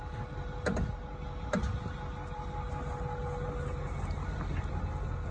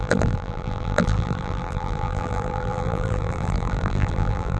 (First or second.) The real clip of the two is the first